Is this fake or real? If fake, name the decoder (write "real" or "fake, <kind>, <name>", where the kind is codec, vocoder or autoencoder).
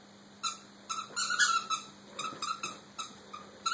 fake, vocoder, BigVGAN v2